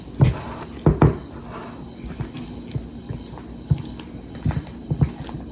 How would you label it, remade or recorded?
recorded